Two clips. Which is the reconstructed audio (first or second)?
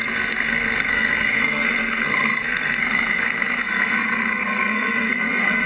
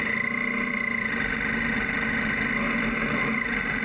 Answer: first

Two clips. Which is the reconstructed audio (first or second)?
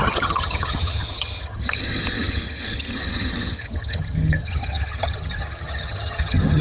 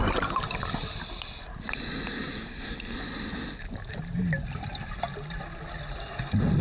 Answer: first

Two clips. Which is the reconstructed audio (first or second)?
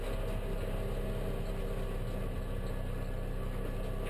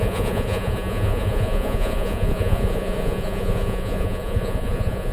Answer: second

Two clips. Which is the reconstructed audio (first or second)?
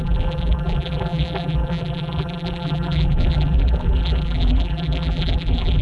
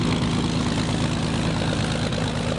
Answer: first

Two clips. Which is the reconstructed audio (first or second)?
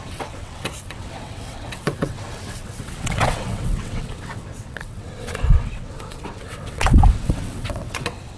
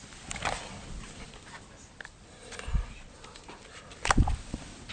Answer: first